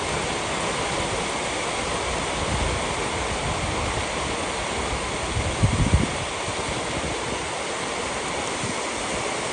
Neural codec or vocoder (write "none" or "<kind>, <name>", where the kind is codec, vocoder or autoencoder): none